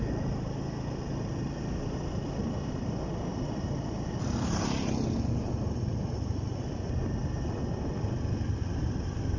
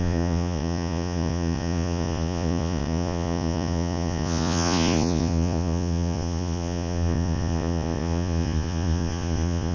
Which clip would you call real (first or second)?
first